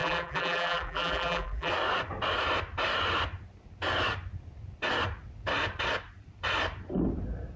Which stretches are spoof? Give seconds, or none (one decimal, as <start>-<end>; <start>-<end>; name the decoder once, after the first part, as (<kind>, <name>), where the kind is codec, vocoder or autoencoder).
0.0-1.7 (vocoder, BigVGAN v2)